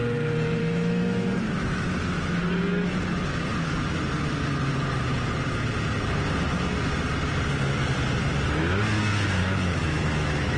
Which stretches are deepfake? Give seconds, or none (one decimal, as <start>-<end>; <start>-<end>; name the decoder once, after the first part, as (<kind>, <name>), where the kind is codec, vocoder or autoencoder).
0.6-2.4 (autoencoder, DAC-VAE); 9.4-10.6